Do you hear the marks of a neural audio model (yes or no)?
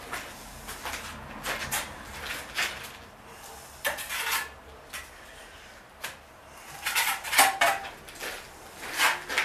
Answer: no